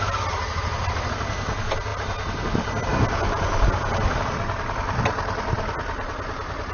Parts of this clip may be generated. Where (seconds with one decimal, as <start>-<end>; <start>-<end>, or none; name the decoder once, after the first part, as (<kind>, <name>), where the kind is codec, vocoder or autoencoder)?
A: none